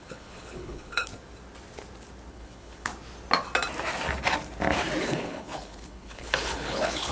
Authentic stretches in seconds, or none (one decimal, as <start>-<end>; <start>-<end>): 1.1-2.3; 2.9-5.0